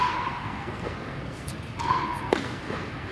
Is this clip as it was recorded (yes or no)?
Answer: no